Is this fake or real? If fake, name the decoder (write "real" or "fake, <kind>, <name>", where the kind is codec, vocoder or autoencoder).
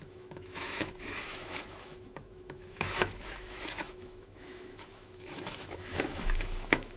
fake, autoencoder, DAC-VAE